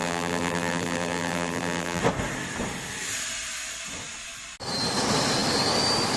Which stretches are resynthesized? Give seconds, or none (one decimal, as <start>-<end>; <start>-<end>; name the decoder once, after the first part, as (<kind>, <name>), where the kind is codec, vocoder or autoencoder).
0.0-2.0 (vocoder, BigVGAN v2)